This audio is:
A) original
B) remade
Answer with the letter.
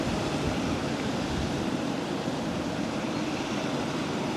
A